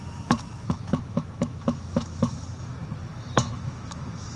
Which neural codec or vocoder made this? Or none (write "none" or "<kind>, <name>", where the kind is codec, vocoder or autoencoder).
autoencoder, DAC-VAE